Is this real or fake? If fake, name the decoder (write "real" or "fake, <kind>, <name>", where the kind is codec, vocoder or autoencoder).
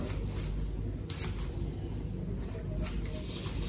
real